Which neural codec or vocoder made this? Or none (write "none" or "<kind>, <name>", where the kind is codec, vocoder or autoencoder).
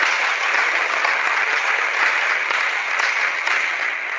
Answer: vocoder, HiFi-GAN